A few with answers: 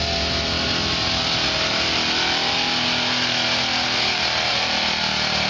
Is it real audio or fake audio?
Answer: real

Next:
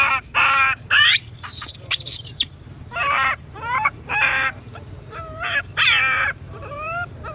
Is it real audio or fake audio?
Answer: fake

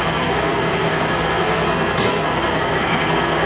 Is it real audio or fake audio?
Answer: fake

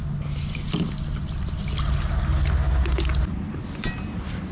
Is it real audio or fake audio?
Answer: real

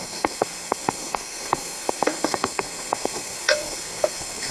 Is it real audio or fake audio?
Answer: fake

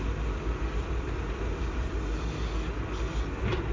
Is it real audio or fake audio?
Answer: fake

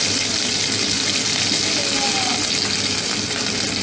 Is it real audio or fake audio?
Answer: real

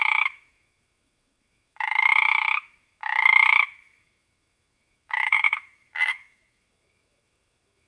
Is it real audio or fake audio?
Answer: fake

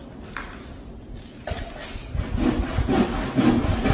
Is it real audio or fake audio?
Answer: real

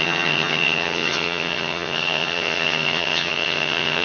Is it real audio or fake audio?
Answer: fake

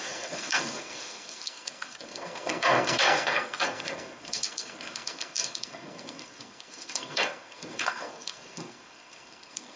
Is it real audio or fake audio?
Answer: fake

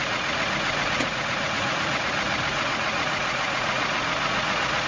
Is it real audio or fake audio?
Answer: fake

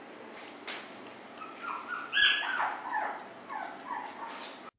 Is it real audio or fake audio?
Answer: real